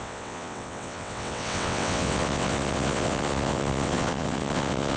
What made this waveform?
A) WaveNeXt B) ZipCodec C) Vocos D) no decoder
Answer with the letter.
A